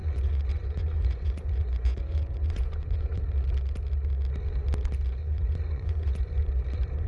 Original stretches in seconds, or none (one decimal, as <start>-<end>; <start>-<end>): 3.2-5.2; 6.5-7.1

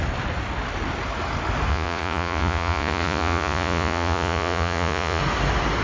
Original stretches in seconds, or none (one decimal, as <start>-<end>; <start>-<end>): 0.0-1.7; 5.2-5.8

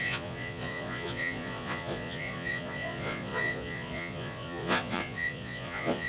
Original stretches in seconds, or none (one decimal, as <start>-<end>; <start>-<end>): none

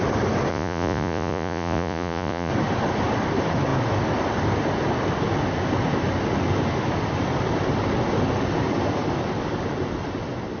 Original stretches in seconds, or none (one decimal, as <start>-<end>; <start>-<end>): 0.0-0.5; 2.5-10.6

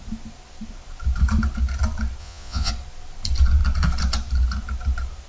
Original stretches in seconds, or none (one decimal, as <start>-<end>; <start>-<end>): 0.0-2.2; 2.7-5.3

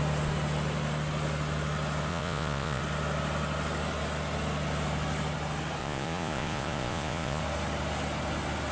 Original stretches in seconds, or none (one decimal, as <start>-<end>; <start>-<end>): 0.0-2.1; 2.8-5.8; 7.4-8.7